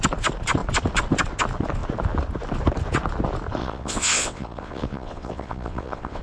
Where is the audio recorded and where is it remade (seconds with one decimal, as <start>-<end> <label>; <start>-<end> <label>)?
0.0-3.6 recorded; 3.6-6.2 remade